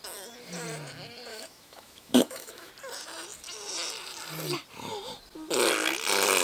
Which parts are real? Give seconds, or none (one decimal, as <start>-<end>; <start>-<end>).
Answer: 0.0-1.3; 2.7-6.4